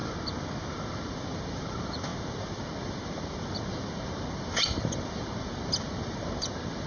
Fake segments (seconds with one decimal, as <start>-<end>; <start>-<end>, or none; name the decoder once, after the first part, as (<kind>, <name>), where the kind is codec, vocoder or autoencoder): 0.7-6.9 (vocoder, BigVGAN v2)